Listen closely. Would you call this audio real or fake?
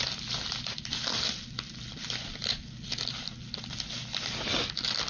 real